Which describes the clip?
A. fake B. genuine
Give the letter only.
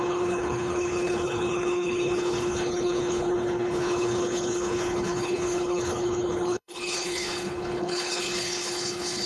A